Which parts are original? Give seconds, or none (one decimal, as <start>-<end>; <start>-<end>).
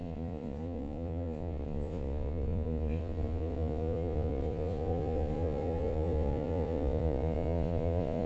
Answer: none